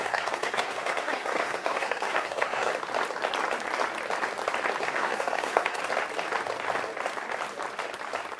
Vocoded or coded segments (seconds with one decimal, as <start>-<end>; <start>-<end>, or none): 0.0-2.7; 4.8-5.8